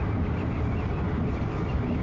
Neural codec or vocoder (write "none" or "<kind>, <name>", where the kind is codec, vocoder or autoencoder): none